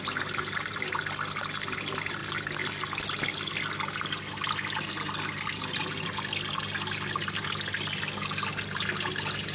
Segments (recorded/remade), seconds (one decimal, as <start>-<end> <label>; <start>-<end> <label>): 0.0-9.5 recorded